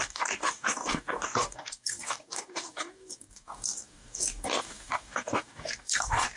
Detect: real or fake fake